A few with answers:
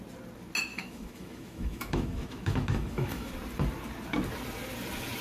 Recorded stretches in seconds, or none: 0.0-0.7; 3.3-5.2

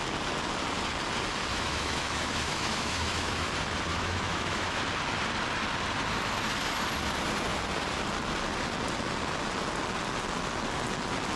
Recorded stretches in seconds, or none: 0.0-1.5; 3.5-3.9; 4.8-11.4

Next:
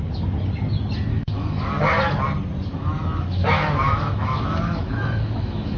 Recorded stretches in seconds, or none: 0.0-1.1; 1.7-2.7

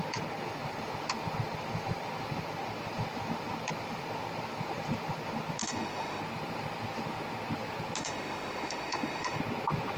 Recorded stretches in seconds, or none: 0.0-5.6; 6.2-8.0; 9.4-10.0

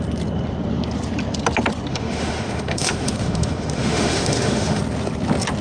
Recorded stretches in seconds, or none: 0.0-1.9; 4.8-5.6

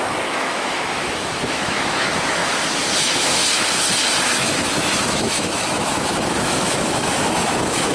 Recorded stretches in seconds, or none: 2.4-3.0; 3.4-4.3